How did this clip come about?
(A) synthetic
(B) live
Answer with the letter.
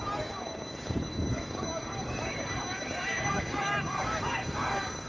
A